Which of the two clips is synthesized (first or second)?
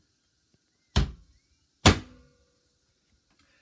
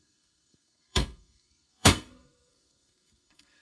second